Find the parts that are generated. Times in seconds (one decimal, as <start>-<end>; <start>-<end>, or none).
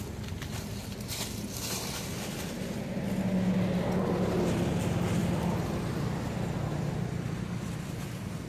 none